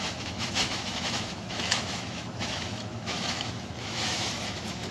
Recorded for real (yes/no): no